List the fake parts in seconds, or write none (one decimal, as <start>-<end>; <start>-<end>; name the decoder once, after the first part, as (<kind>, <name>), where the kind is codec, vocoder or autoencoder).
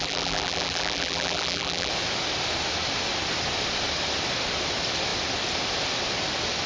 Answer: 0.0-1.9 (vocoder, BigVGAN v2)